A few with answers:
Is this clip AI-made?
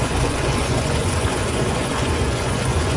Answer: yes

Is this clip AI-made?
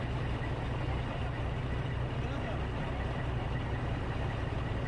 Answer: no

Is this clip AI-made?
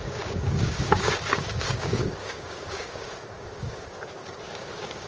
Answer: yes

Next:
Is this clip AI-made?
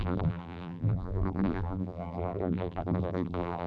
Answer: yes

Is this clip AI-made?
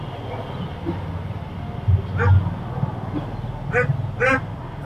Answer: no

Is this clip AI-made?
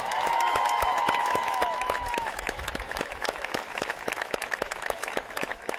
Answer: yes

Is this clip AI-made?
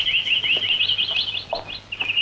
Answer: no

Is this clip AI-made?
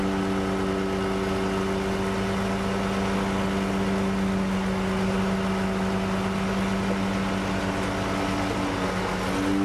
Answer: no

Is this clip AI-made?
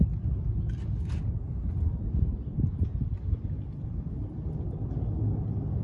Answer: no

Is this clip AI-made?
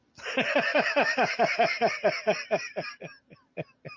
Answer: yes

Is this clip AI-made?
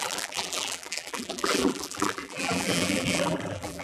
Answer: yes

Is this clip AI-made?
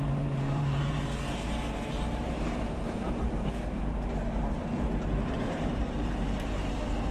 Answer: yes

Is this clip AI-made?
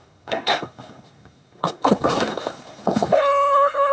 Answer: yes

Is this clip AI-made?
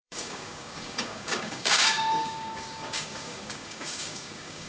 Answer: yes